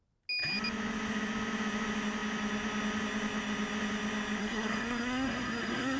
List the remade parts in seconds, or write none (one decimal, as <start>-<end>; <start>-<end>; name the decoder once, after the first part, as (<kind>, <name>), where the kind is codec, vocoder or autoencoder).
4.4-6.0 (codec, SNAC)